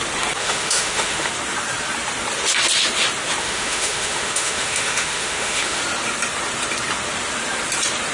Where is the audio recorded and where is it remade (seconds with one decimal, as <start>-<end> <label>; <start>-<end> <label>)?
0.0-0.4 recorded; 0.4-1.3 remade; 1.3-3.4 recorded; 3.4-5.8 remade; 5.8-8.1 recorded